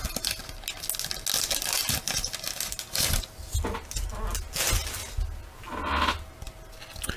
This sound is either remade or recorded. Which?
recorded